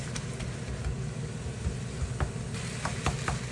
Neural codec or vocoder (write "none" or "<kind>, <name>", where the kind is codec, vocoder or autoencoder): none